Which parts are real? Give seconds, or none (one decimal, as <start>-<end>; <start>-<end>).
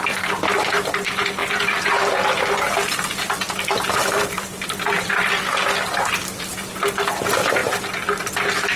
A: 0.0-1.4; 6.6-7.6; 8.3-8.8